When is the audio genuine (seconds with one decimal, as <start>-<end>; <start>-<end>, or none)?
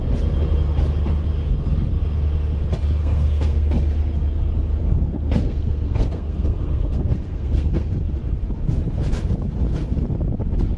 0.0-3.0; 3.8-4.8; 8.0-10.8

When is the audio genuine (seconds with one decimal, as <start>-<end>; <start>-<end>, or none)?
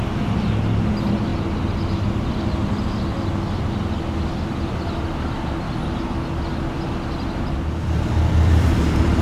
0.0-9.2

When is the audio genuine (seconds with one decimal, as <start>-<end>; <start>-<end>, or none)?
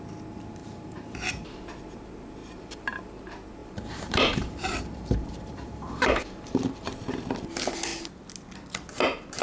0.0-0.6; 1.6-2.4; 3.0-3.6; 6.9-9.4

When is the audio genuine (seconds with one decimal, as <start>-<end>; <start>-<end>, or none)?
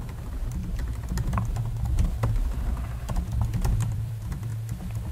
0.6-3.7; 4.5-5.1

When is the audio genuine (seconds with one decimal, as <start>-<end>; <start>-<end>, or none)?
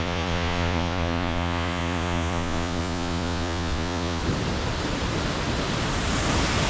4.2-6.7